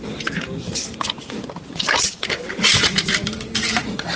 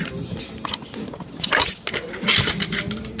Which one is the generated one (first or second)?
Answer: first